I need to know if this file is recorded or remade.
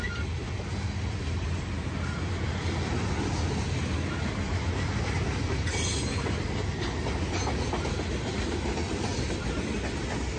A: recorded